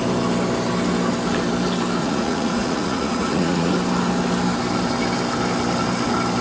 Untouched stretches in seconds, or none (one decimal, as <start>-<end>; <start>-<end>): 0.0-2.0; 3.7-6.4